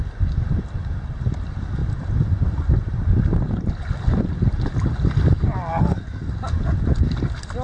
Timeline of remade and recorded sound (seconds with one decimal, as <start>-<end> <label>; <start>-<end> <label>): 0.0-7.6 recorded